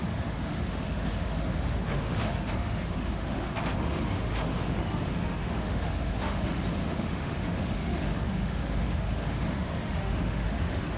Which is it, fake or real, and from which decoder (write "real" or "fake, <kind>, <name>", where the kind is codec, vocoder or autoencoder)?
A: fake, autoencoder, DAC-VAE